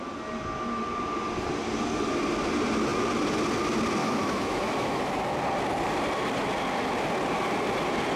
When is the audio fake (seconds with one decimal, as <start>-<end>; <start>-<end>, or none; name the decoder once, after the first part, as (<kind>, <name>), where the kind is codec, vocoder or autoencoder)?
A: 4.0-5.0 (autoencoder, DAC-VAE)